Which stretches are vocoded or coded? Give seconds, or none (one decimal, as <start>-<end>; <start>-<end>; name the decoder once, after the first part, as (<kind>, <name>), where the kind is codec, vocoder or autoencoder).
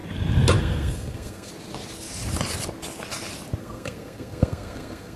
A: 0.6-1.5 (codec, SNAC); 3.6-5.2